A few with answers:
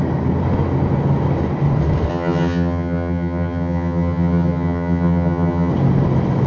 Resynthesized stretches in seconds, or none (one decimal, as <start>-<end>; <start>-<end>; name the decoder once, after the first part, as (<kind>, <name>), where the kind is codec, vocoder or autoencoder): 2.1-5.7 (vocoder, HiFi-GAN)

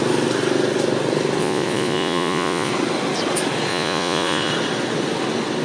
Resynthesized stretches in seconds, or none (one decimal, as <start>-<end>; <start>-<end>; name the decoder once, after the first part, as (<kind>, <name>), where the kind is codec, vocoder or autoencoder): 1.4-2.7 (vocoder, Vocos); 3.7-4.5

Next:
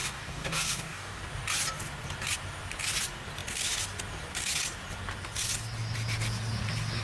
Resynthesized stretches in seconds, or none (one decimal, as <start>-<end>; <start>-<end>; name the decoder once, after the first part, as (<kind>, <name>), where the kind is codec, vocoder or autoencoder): 0.0-1.2 (codec, DAC)

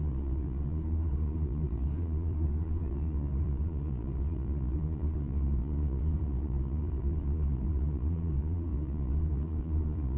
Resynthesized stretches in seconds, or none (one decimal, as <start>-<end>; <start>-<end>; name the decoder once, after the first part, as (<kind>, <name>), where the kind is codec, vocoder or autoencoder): 0.0-10.2 (vocoder, Vocos)